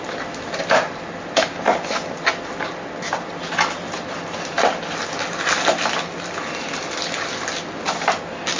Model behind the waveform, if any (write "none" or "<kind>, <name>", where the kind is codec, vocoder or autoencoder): none